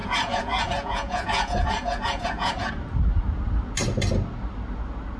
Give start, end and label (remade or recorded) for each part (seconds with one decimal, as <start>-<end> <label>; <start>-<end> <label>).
0.0-2.7 remade; 2.7-5.2 recorded